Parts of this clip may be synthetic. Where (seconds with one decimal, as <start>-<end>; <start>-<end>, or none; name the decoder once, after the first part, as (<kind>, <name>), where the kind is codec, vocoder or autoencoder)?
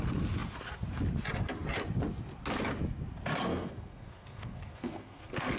3.5-5.6 (codec, SNAC)